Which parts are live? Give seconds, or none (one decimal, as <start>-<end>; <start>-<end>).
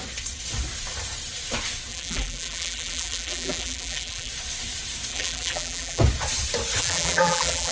0.0-1.9; 4.3-5.1; 6.0-6.8